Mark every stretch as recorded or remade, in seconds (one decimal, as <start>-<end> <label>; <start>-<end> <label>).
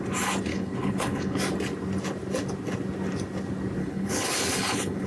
0.0-0.5 recorded; 0.5-1.4 remade; 1.4-3.8 recorded; 3.8-5.1 remade